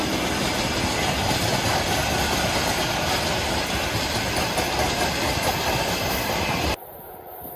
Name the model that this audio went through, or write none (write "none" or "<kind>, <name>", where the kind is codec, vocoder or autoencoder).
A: none